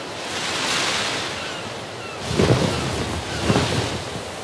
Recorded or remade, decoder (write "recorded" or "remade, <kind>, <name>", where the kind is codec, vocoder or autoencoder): recorded